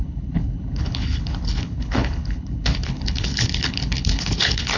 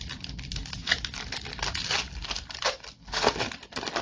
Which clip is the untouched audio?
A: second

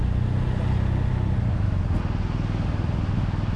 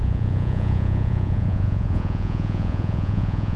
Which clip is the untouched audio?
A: first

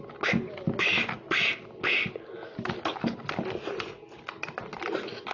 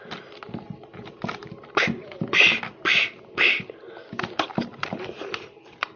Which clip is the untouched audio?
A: first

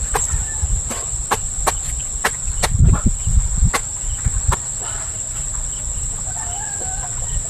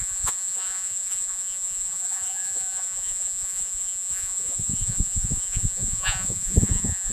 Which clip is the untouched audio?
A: first